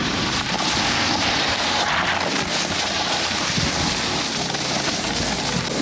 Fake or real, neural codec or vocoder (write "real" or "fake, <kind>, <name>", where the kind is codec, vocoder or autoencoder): real